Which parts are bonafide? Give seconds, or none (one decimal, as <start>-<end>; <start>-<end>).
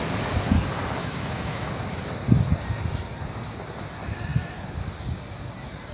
0.0-1.0; 1.7-5.9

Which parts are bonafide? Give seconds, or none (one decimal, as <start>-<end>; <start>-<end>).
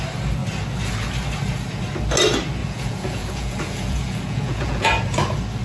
0.0-2.6; 4.9-5.6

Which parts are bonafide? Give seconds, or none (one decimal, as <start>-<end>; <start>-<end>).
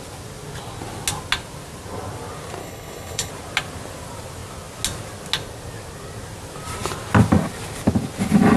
0.0-2.6; 3.3-8.6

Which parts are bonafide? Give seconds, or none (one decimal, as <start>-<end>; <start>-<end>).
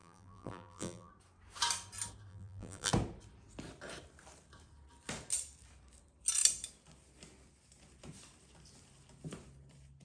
1.1-2.3; 2.9-10.0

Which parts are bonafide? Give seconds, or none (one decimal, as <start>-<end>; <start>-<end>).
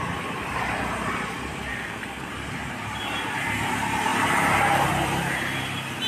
0.0-1.7; 2.3-6.1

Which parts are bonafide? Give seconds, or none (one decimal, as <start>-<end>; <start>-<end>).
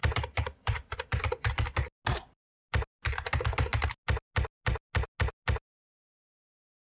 1.2-7.0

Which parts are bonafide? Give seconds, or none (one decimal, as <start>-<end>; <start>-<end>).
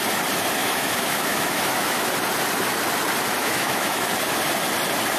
0.0-0.6; 2.1-3.4; 4.1-5.2